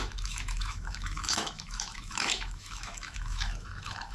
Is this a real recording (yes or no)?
no